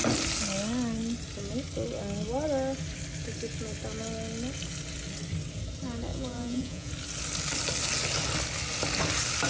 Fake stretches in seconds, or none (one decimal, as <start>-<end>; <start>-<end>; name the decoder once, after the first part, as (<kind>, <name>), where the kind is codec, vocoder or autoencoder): 6.1-6.9 (vocoder, Vocos)